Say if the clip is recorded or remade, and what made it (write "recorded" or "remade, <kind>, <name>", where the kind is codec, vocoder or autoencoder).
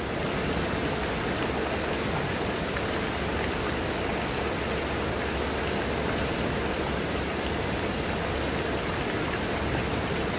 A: recorded